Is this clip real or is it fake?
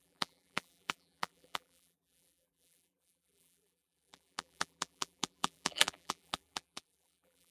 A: fake